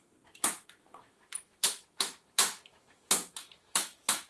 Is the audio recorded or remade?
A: remade